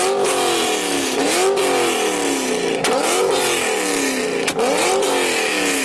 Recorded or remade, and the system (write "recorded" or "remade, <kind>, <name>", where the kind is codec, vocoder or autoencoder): recorded